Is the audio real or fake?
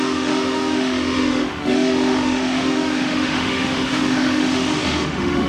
fake